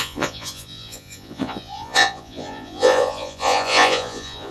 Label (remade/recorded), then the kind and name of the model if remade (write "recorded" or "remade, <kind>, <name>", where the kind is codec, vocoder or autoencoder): remade, vocoder, Vocos